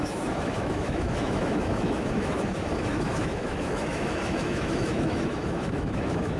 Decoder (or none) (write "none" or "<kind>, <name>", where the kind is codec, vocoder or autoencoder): autoencoder, DAC-VAE